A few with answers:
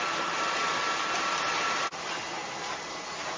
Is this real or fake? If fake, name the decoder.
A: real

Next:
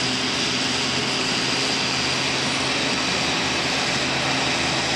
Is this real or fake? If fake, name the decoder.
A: real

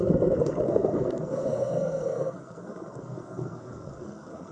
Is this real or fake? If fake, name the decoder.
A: fake, codec, SNAC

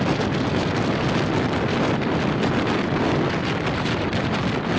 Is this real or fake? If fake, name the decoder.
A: real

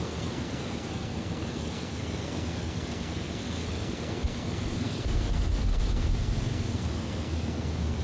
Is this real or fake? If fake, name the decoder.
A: fake, codec, SNAC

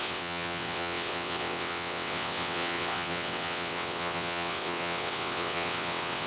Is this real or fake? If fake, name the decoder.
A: fake, vocoder, WaveNeXt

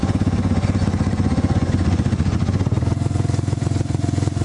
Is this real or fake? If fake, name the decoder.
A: fake, vocoder, Vocos